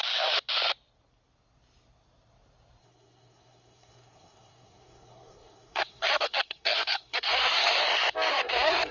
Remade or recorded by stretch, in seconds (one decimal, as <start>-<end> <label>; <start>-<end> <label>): 0.0-2.8 recorded; 2.8-7.8 remade; 7.8-8.3 recorded; 8.3-8.9 remade